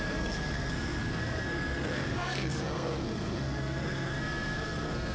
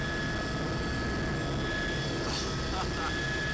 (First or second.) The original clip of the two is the second